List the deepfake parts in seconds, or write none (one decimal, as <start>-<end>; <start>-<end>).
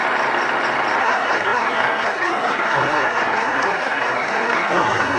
1.0-5.2